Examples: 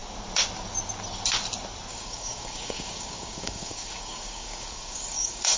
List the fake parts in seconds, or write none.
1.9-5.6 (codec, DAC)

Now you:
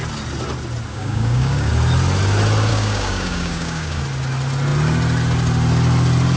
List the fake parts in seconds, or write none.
0.9-1.7 (codec, DAC); 2.7-4.0

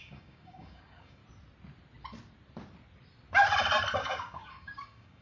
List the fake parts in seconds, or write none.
0.0-1.2 (codec, DAC); 4.0-5.2

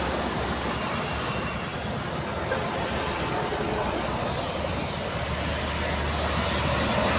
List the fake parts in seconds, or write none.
none

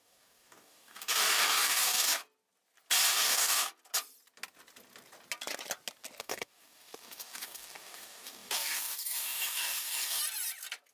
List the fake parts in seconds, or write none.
0.0-2.2 (codec, DAC); 3.2-3.7; 6.2-10.2

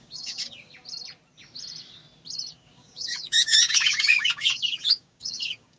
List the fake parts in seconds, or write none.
0.0-0.7 (codec, DAC); 2.5-5.8